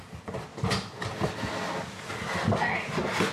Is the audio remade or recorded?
recorded